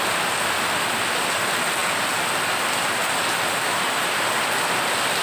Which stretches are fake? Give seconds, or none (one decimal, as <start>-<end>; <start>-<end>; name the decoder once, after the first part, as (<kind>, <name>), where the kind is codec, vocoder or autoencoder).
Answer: 3.0-3.8 (vocoder, BigVGAN v2)